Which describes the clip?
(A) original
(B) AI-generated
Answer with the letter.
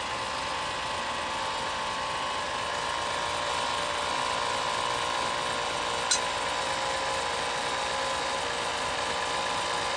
A